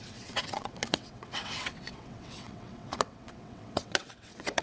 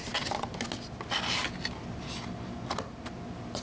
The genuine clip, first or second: second